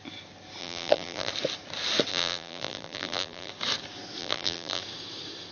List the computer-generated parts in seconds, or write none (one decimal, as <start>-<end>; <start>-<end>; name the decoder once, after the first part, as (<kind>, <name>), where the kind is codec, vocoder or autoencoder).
0.6-1.3 (vocoder, BigVGAN v2); 2.1-3.5; 4.2-4.8